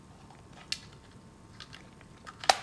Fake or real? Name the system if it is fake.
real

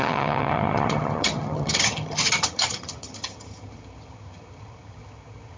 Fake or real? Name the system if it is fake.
fake, vocoder, HiFi-GAN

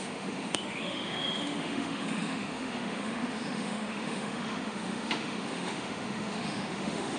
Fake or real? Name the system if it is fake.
fake, autoencoder, DAC-VAE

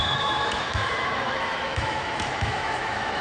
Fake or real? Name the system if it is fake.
fake, autoencoder, DAC-VAE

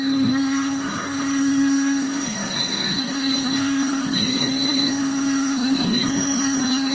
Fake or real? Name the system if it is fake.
fake, codec, SNAC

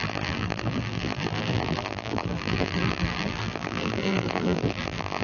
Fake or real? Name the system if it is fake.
fake, vocoder, BigVGAN v2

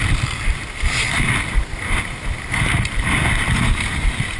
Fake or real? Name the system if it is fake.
real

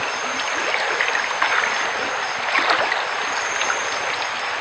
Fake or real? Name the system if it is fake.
real